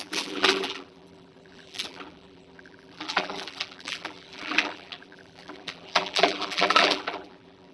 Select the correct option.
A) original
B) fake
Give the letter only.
B